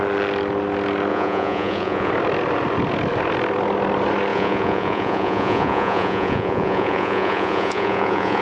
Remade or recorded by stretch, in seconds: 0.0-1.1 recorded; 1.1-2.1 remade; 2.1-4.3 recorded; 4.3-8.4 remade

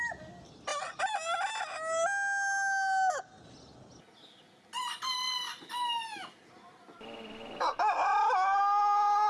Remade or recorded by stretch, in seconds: 0.0-9.3 recorded

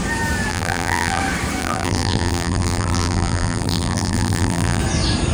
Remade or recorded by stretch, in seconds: 0.0-0.5 recorded; 0.5-1.2 remade; 1.2-1.6 recorded; 1.6-4.8 remade; 4.8-5.3 recorded

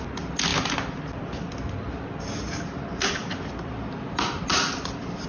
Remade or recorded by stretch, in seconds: 0.0-3.2 recorded; 3.2-5.3 remade

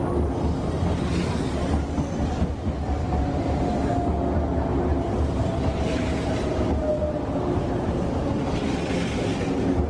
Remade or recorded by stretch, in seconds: 0.0-4.7 recorded; 4.7-8.3 remade; 8.3-9.9 recorded

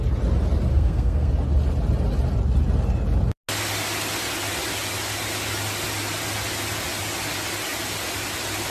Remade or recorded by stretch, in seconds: 0.0-0.7 recorded; 0.7-1.3 remade; 1.3-8.7 recorded